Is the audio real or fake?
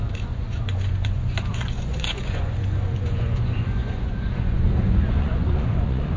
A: fake